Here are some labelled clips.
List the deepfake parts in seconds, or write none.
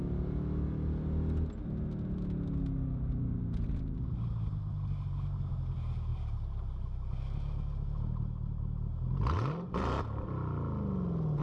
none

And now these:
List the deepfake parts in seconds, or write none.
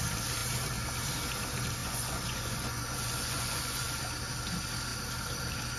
1.8-4.0 (vocoder, Vocos)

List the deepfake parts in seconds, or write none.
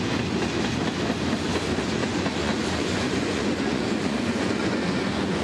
2.0-5.4 (vocoder, Vocos)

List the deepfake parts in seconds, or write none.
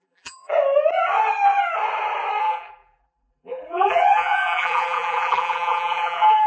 0.0-0.5 (vocoder, BigVGAN v2); 2.4-6.5